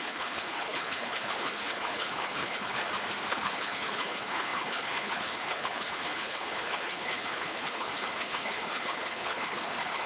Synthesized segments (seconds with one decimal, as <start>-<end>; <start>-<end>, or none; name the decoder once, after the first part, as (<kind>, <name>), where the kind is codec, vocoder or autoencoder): 0.0-2.8 (codec, HILCodec); 3.3-10.1